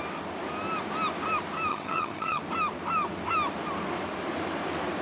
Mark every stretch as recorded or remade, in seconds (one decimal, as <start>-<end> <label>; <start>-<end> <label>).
0.0-1.7 recorded; 1.7-2.4 remade; 2.4-5.0 recorded